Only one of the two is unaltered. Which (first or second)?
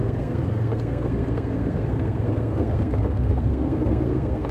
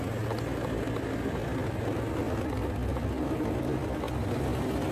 second